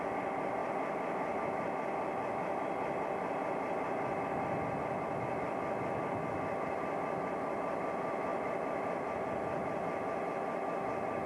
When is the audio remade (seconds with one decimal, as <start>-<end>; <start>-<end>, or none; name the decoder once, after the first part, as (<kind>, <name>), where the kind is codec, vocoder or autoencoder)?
none